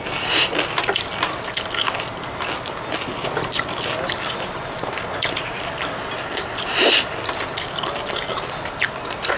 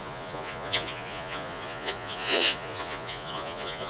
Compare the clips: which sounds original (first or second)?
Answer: first